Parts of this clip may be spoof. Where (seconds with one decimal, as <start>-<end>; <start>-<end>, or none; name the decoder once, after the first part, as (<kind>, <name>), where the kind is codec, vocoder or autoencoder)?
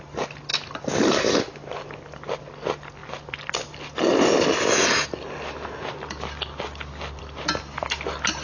none